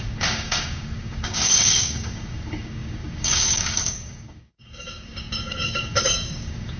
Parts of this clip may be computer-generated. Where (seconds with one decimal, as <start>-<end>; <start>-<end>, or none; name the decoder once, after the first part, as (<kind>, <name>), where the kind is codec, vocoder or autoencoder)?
0.0-6.8 (codec, DAC)